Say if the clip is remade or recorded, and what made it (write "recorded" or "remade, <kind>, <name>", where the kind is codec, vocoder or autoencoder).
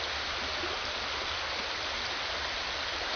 recorded